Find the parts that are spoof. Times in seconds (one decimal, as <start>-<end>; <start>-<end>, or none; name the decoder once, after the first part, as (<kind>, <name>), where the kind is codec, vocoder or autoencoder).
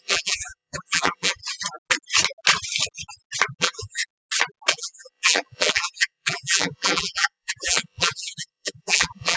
0.0-1.4 (vocoder, BigVGAN v2); 3.6-4.0; 4.7-9.4